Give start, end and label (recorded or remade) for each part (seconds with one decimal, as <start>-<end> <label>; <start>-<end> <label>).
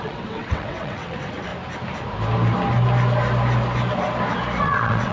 0.0-1.5 remade; 1.5-4.6 recorded; 4.6-5.1 remade